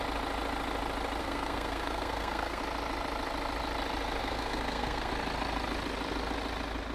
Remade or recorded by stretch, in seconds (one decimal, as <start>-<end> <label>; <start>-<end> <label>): 0.0-1.2 recorded; 1.2-2.6 remade; 2.6-4.2 recorded; 4.2-5.1 remade; 5.1-6.9 recorded